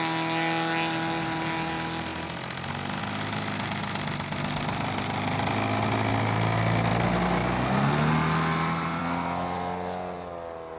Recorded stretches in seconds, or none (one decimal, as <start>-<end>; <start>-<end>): 0.0-10.8